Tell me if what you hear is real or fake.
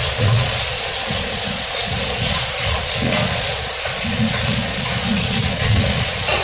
fake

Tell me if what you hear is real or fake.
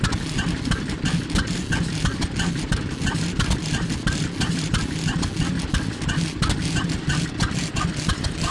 real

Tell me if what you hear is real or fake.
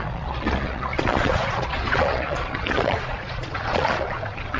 fake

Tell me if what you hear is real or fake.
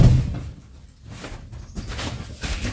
real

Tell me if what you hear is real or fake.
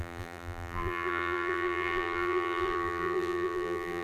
fake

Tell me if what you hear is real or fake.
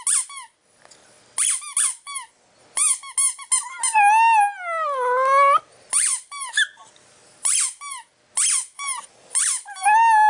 real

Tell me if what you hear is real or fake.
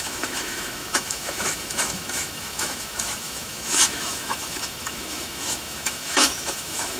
fake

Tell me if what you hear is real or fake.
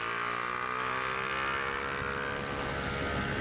real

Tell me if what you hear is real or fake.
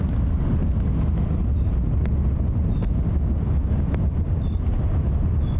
real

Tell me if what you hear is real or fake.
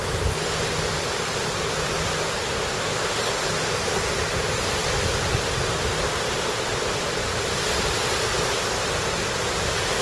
real